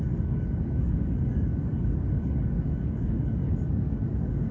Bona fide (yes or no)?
no